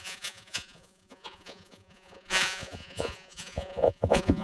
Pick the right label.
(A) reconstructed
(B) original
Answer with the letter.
A